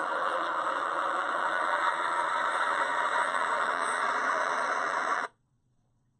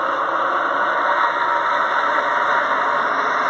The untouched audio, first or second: second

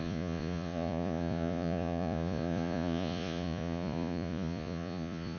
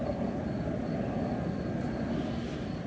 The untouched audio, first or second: second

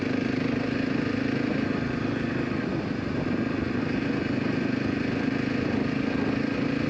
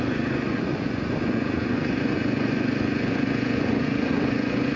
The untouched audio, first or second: first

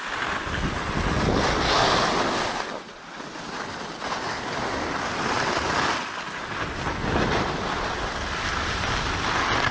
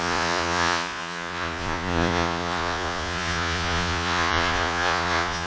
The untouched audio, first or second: first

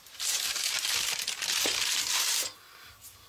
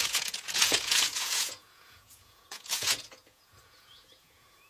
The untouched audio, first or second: first